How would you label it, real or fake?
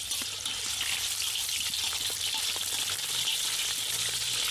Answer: real